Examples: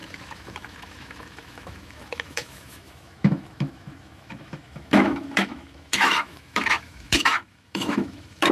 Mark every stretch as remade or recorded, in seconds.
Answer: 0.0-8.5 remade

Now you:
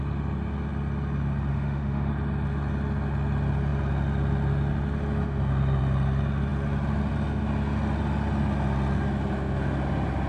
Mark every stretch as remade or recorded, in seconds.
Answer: 0.0-1.5 recorded; 1.5-2.1 remade; 2.1-10.3 recorded